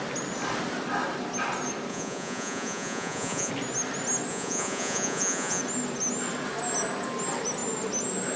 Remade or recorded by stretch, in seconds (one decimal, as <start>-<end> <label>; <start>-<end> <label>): 0.0-1.9 recorded; 1.9-3.5 remade; 3.5-4.3 recorded; 4.3-5.6 remade; 5.6-8.4 recorded